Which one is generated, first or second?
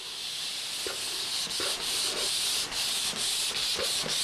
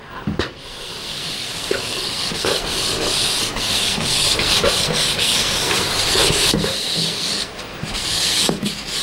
second